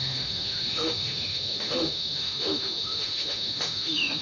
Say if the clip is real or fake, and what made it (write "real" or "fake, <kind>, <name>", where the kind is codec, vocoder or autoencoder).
fake, autoencoder, DAC-VAE